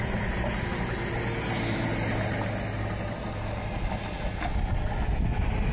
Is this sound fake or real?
real